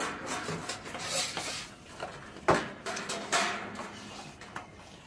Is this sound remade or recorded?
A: recorded